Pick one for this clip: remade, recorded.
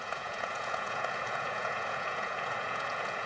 remade